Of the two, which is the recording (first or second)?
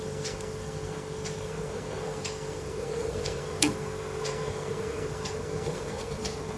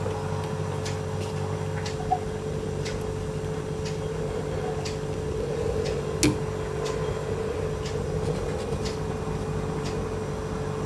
second